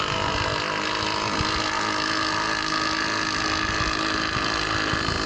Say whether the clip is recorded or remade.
recorded